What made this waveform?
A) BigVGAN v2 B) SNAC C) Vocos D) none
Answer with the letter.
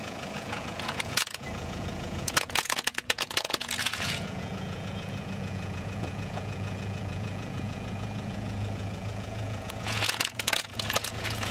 C